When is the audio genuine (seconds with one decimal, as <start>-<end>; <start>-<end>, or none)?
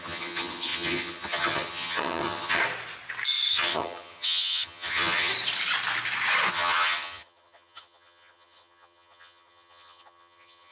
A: 2.6-3.5; 5.3-6.5